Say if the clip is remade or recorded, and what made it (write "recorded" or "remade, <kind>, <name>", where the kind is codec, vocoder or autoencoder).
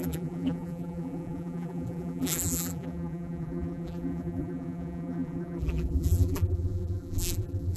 remade, vocoder, BigVGAN v2